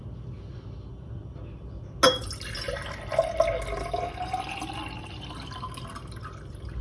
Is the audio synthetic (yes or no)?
no